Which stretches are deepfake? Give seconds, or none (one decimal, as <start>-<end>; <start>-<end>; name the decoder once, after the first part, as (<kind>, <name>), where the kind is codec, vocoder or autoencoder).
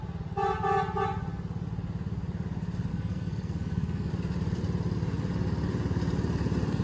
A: 2.9-4.1 (codec, SNAC)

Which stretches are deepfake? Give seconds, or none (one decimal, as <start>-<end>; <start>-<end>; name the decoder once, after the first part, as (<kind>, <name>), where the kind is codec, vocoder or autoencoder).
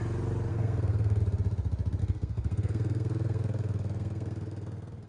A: 0.5-1.2 (codec, SNAC); 2.0-5.1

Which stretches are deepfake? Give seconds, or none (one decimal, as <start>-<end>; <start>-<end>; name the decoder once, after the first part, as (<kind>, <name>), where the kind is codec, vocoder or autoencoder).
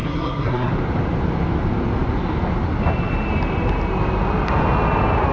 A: 0.0-0.7 (codec, SNAC)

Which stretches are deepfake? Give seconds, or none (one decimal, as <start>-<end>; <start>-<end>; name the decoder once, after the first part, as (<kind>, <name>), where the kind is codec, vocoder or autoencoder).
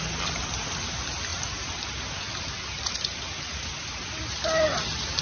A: none